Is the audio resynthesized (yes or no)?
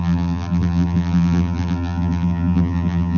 yes